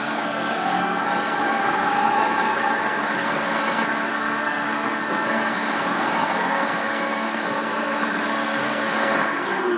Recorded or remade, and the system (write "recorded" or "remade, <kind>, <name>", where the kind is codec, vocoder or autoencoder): remade, codec, SNAC